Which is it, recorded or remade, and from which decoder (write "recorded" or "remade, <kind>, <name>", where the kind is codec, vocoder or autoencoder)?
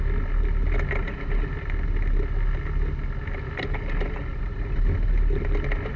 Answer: recorded